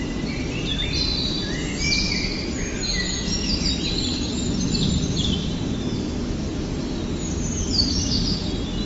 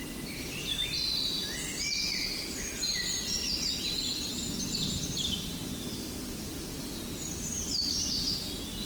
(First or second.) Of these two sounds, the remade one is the second